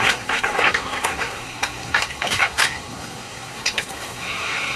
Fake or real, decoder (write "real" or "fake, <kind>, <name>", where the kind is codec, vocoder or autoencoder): fake, codec, SNAC